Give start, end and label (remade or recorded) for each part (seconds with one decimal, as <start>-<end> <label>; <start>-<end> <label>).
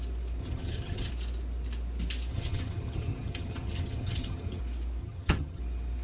0.0-0.4 recorded; 0.4-1.1 remade; 1.1-2.3 recorded; 2.3-4.6 remade; 4.6-5.0 recorded; 5.0-5.6 remade; 5.6-6.0 recorded